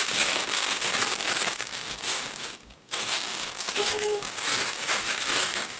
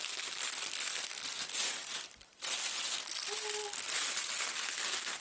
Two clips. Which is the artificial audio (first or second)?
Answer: first